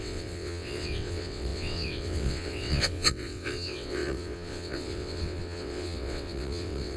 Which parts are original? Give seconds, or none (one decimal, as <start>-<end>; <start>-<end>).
none